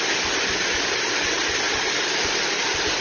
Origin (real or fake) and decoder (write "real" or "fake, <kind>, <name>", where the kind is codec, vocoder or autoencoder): real